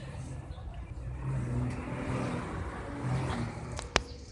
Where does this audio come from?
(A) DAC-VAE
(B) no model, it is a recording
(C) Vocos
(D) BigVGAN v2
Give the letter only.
B